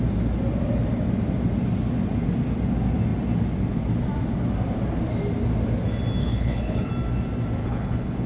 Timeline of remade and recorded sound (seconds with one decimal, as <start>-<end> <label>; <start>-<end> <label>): 0.0-6.2 recorded; 6.2-6.9 remade; 6.9-7.6 recorded; 7.6-8.3 remade